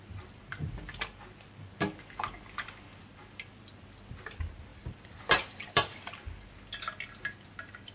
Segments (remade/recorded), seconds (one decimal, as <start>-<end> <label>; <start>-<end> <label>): 0.0-4.7 recorded; 4.7-6.1 remade; 6.1-7.9 recorded